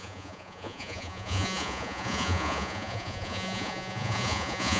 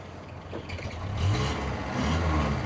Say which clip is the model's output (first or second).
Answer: first